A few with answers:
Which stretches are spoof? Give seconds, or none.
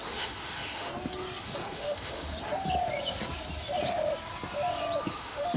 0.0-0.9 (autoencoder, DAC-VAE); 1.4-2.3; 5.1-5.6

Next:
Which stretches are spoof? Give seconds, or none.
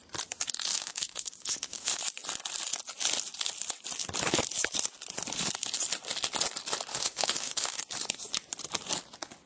0.7-2.0 (autoencoder, DAC-VAE); 6.9-7.8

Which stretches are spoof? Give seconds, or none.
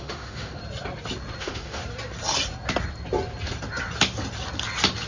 0.0-0.6 (autoencoder, DAC-VAE); 1.4-1.8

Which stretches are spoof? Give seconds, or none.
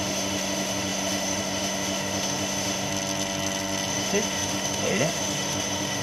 0.0-2.9 (autoencoder, DAC-VAE); 3.9-6.0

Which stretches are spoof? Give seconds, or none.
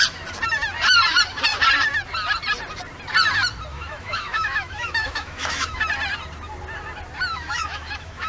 3.7-5.8 (autoencoder, DAC-VAE); 7.3-8.3